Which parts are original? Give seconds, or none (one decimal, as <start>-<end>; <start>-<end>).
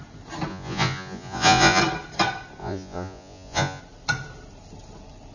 0.0-0.5; 1.8-2.6; 3.8-5.3